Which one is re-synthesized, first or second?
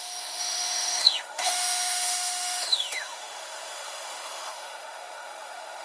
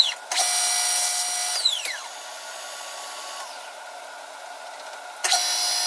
first